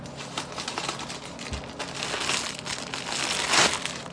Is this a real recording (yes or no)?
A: yes